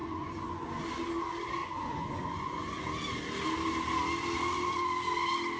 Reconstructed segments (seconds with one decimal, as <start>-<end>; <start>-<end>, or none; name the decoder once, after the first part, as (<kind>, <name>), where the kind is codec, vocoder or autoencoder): 0.0-0.9 (vocoder, Vocos); 1.6-2.8